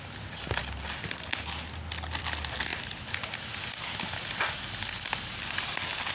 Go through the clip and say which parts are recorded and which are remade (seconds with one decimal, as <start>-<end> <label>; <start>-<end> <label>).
0.0-6.1 recorded